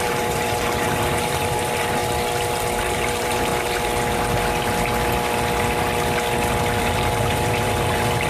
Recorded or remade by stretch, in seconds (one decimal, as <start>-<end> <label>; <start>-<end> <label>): 0.0-2.0 remade; 2.0-2.8 recorded; 2.8-3.5 remade; 3.5-6.8 recorded; 6.8-8.3 remade